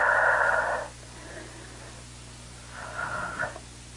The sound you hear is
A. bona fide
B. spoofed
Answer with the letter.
A